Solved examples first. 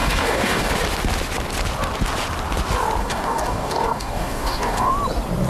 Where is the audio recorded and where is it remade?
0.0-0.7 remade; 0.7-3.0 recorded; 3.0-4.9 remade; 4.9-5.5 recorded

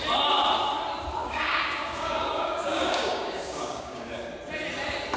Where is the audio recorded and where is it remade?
0.0-1.2 recorded; 1.2-4.3 remade; 4.3-5.2 recorded